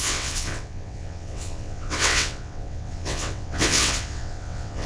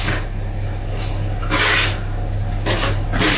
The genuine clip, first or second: second